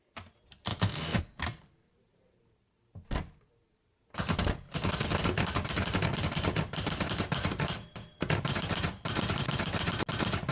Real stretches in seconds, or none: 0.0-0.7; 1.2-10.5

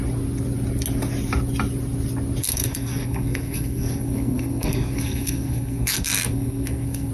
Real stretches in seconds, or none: 0.0-2.4

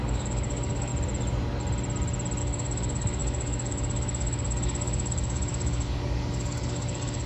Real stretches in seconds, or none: 0.9-2.4

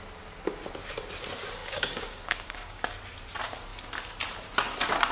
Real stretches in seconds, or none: 0.0-1.6; 3.0-5.1

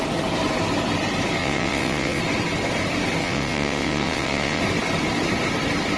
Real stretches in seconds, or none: 0.0-1.4; 2.2-3.2; 4.6-6.0